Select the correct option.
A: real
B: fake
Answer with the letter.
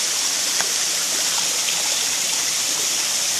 B